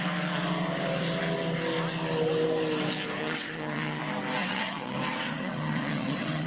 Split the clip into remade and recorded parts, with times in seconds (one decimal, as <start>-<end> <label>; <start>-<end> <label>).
0.0-3.2 recorded; 3.2-4.0 remade; 4.0-4.4 recorded; 4.4-6.5 remade